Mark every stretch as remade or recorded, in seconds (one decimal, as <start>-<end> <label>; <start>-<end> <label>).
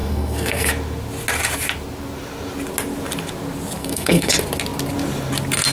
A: 0.0-0.7 remade; 0.7-3.8 recorded; 3.8-4.3 remade; 4.3-5.7 recorded